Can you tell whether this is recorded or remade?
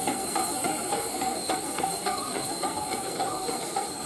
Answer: remade